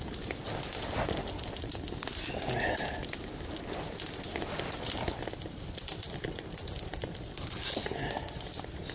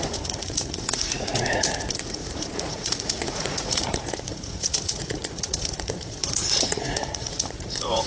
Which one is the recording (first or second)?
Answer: first